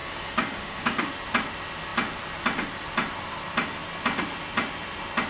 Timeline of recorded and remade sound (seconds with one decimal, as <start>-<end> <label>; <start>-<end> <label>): 0.0-1.1 remade; 1.1-5.3 recorded